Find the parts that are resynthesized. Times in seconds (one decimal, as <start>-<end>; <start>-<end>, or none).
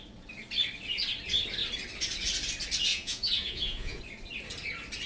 2.9-4.0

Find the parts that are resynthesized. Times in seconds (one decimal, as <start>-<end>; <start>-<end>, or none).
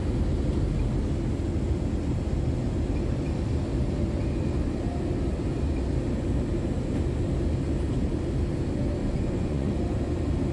9.0-9.7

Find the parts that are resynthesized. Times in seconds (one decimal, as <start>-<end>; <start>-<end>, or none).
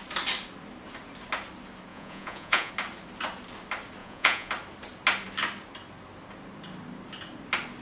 1.9-2.7; 4.0-4.5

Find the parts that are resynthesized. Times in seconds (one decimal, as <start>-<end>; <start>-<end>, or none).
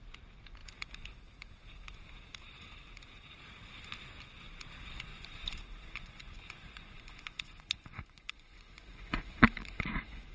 5.1-10.3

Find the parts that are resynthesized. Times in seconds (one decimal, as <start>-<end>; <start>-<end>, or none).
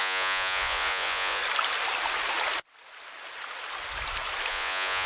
0.0-1.4; 4.5-5.1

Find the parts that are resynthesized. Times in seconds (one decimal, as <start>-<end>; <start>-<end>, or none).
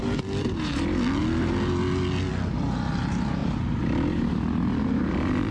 none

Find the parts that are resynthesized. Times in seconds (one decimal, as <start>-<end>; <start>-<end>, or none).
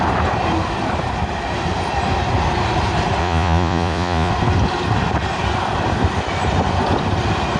3.2-4.3